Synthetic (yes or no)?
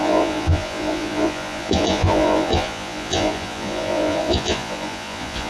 yes